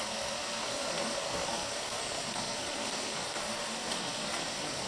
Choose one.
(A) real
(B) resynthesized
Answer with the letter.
B